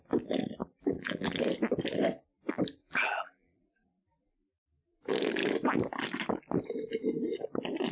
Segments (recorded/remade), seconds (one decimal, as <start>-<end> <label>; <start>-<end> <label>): 0.0-0.6 recorded; 0.6-1.4 remade; 1.4-2.8 recorded; 2.8-5.0 remade; 5.0-7.9 recorded